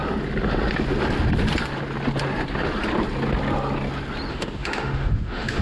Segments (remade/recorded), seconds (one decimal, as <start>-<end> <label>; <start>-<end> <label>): 0.0-4.3 recorded; 4.3-5.6 remade